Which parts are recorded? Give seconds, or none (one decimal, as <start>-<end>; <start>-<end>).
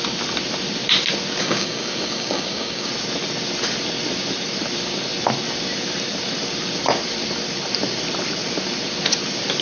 0.0-1.4; 2.9-9.6